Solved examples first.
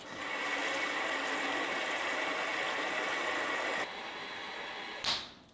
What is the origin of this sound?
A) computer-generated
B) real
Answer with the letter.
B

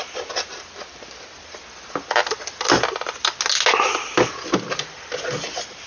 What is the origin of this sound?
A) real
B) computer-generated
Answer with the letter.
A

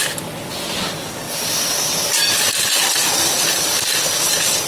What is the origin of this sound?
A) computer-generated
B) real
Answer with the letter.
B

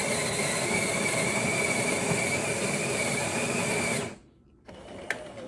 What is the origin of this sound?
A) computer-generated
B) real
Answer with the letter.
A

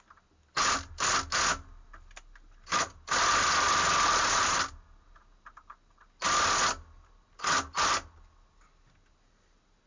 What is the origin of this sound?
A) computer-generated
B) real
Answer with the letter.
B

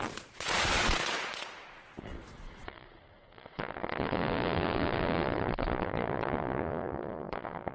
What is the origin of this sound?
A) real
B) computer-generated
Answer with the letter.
B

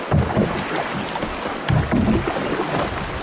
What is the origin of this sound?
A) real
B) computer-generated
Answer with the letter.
A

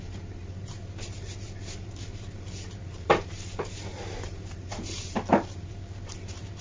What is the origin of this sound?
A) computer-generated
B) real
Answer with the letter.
A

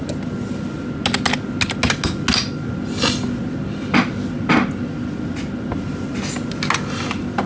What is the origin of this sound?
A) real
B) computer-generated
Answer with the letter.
A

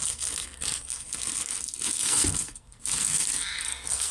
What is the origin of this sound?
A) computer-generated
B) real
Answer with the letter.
A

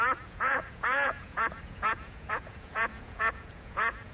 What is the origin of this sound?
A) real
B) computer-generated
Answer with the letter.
B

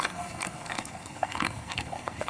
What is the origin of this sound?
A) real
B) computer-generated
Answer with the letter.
B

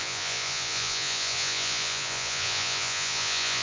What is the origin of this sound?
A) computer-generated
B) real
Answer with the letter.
A